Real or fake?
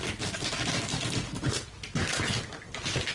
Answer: real